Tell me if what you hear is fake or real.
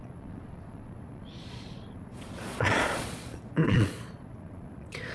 fake